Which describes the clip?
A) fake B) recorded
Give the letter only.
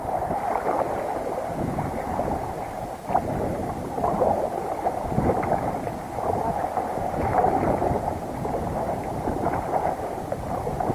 B